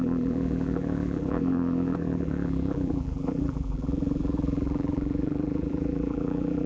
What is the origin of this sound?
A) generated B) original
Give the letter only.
A